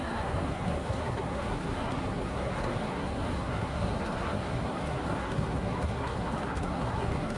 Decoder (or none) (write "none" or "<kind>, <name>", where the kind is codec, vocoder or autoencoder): codec, SNAC